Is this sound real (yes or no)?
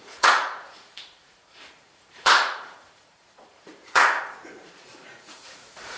no